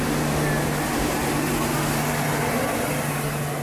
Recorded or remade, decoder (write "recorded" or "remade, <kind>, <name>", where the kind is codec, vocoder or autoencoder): recorded